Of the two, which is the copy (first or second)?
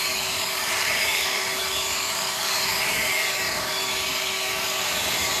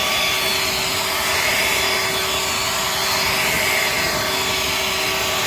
first